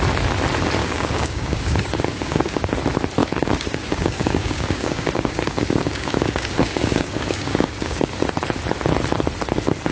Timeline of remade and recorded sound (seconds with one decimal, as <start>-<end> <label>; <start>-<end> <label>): 0.0-0.8 recorded; 0.8-2.7 remade; 2.7-3.2 recorded; 3.2-8.1 remade; 8.1-9.9 recorded